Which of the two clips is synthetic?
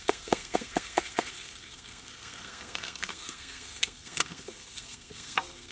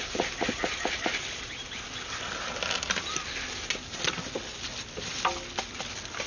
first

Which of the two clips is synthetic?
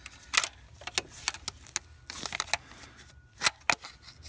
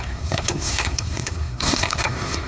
second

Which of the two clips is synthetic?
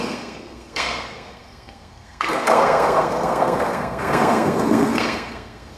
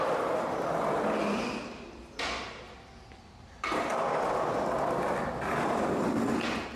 first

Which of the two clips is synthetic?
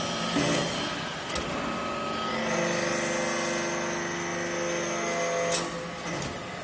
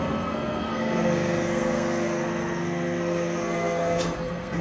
second